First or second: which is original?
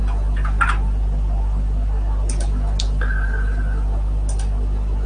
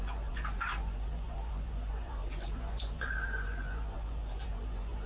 first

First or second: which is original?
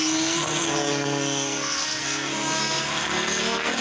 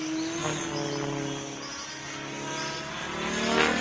second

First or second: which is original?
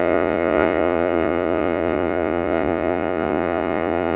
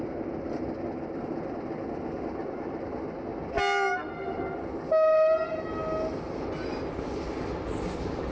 second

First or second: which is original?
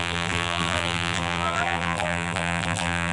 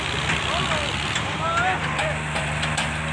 second